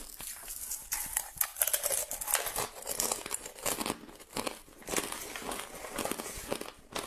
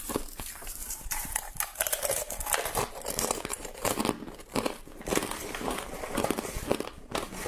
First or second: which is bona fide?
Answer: first